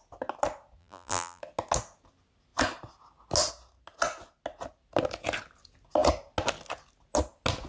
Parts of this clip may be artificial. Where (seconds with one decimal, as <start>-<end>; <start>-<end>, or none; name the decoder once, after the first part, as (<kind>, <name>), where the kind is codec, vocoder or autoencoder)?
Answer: 0.8-1.4 (vocoder, BigVGAN v2)